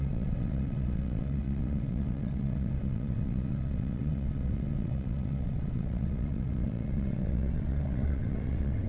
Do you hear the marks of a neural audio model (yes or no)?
yes